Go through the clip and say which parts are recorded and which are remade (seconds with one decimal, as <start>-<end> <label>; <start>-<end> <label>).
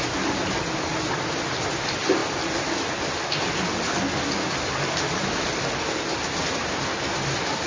0.0-7.7 recorded